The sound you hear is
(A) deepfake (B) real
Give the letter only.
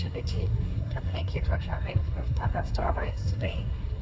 A